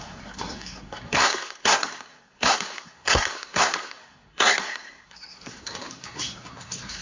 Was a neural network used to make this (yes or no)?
yes